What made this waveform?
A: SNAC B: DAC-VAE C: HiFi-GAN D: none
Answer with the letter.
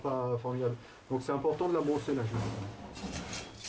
D